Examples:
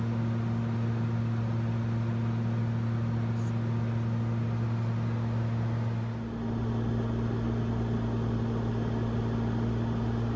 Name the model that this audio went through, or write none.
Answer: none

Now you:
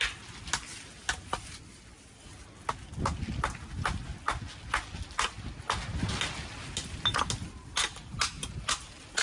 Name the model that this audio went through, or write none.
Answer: none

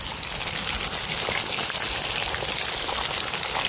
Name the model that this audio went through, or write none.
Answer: none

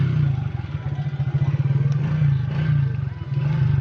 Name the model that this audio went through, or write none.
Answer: none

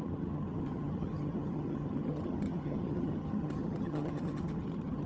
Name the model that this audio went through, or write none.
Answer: vocoder, HiFi-GAN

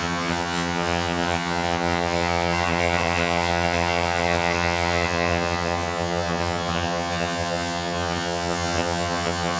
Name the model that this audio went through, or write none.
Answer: vocoder, HiFi-GAN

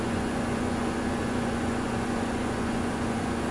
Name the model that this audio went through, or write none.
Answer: vocoder, Vocos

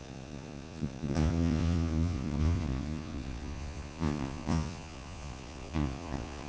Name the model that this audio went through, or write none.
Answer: vocoder, Vocos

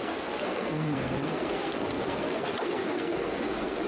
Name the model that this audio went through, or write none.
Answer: codec, SNAC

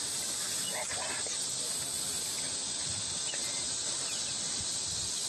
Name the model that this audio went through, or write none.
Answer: none